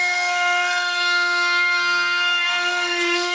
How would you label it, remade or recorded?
remade